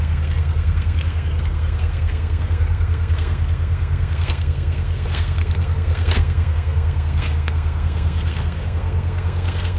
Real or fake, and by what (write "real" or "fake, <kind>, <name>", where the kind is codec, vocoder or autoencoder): fake, codec, SNAC